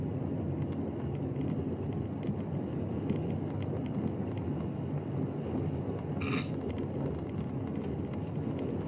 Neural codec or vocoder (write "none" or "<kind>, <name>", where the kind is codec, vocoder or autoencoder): none